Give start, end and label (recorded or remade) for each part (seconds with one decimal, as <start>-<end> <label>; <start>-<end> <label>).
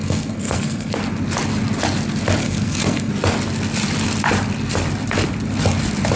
0.0-1.0 remade; 1.0-2.4 recorded; 2.4-3.1 remade; 3.1-6.2 recorded